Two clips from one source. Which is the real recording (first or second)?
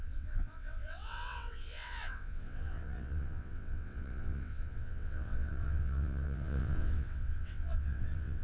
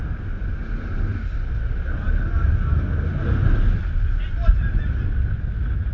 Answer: second